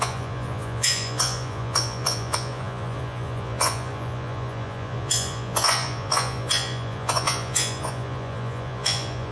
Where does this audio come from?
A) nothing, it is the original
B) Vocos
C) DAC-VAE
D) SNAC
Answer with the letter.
B